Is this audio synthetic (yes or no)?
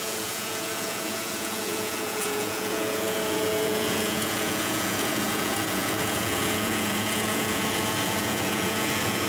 yes